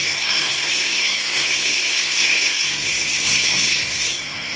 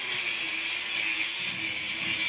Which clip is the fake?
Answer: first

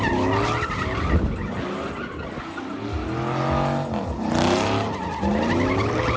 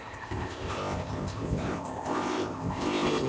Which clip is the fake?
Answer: second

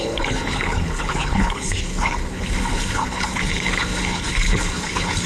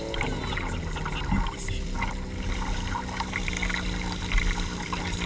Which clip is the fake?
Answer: first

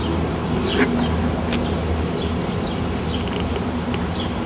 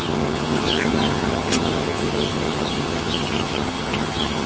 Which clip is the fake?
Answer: second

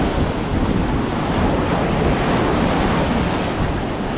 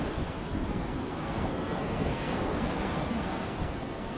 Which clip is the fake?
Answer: second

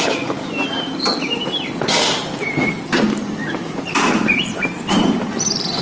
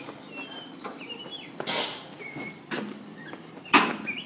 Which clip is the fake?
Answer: first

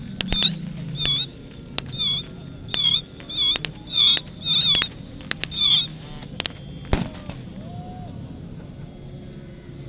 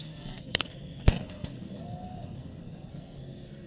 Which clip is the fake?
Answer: second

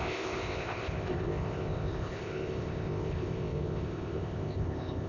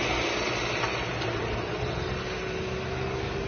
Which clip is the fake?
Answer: first